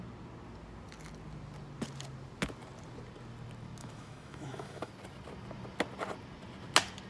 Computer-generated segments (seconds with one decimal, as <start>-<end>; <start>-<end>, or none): 3.8-4.9